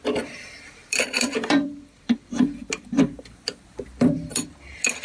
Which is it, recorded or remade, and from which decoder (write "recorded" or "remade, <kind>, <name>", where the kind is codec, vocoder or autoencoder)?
remade, vocoder, BigVGAN v2